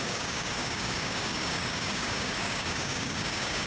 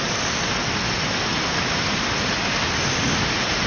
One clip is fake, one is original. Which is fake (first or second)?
first